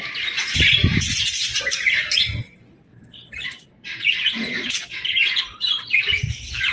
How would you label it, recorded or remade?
remade